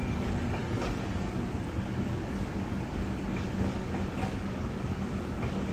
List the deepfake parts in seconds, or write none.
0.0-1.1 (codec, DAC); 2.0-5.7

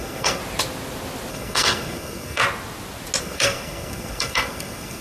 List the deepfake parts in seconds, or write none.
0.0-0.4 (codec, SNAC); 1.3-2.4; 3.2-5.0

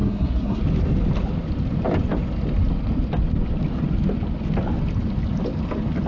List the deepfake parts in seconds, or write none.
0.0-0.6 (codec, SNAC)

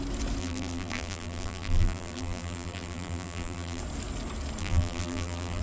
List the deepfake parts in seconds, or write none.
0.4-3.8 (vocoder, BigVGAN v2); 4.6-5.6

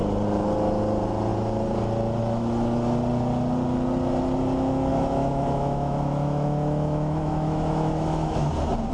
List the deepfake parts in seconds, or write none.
4.9-8.5 (autoencoder, DAC-VAE)

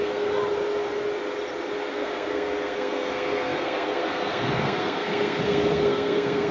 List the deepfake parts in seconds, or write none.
0.0-0.4 (codec, SNAC); 1.9-6.5

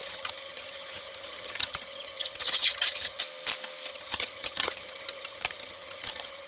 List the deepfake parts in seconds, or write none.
0.0-3.2 (vocoder, HiFi-GAN); 3.9-6.5

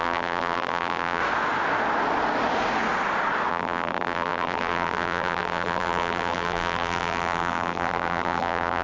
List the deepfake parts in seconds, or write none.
0.0-1.2 (vocoder, BigVGAN v2); 3.5-8.8